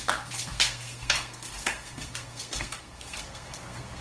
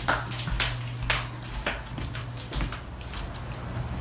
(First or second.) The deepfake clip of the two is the first